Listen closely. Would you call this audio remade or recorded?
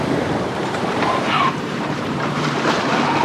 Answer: remade